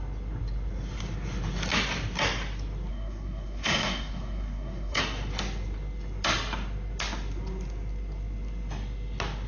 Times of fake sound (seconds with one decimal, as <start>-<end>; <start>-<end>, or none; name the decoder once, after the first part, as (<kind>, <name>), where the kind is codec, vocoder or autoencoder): 2.9-5.0 (codec, SNAC)